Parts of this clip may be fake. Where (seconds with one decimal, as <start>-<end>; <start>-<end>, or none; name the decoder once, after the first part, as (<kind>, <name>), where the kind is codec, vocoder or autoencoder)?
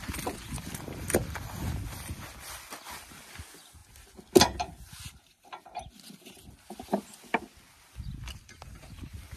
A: 0.0-3.8 (vocoder, BigVGAN v2); 8.0-9.4